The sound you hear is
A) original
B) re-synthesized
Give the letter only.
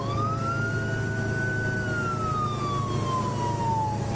A